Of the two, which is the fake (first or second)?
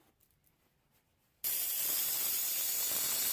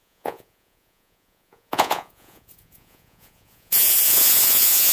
second